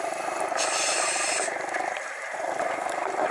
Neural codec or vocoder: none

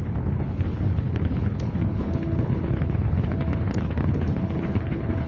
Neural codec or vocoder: codec, HILCodec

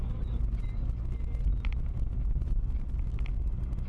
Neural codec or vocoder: none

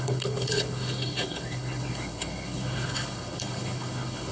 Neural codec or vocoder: codec, HILCodec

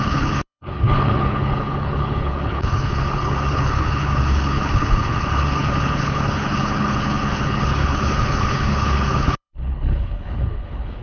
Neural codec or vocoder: codec, HILCodec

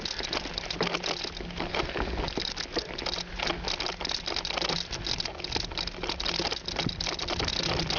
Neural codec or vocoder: none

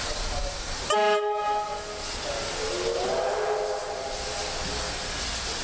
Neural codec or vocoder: none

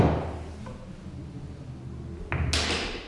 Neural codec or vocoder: none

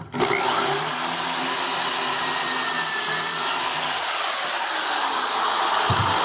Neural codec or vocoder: none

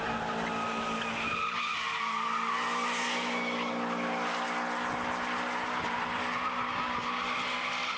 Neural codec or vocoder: none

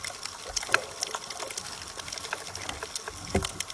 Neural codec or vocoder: none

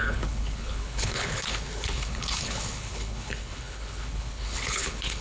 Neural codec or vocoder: codec, HILCodec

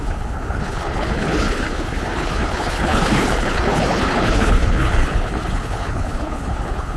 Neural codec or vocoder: codec, HILCodec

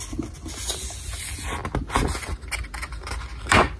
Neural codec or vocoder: none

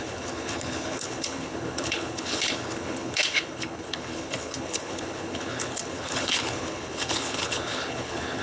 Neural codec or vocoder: codec, HILCodec